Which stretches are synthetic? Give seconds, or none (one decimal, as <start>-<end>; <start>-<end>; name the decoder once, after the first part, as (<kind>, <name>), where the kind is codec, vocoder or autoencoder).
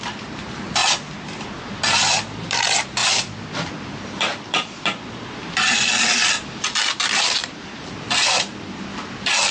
none